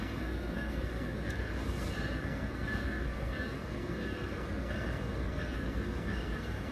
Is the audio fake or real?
fake